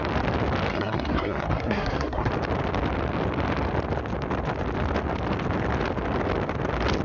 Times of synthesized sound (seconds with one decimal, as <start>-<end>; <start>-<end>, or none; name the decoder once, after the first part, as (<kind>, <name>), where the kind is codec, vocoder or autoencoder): 0.7-2.3 (codec, SNAC)